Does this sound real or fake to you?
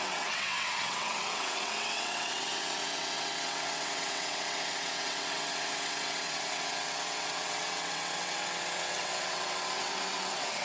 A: fake